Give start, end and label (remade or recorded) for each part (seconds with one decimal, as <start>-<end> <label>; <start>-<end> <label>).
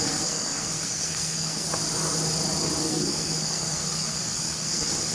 0.0-1.7 remade; 1.7-2.8 recorded; 2.8-5.1 remade